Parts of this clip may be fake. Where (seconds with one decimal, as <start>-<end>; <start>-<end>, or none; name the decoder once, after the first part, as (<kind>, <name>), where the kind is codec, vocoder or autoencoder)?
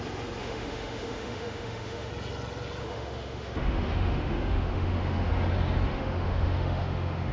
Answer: 0.4-2.1 (autoencoder, DAC-VAE); 2.8-5.3; 5.9-7.3